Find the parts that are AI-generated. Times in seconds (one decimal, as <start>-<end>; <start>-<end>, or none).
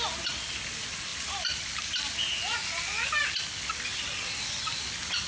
none